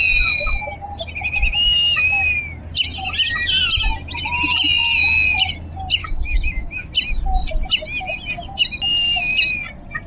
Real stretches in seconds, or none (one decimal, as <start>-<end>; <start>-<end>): 0.0-6.0; 6.9-10.1